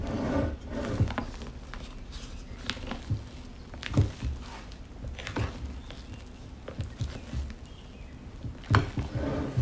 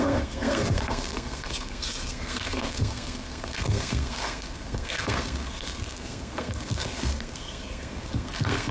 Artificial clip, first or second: second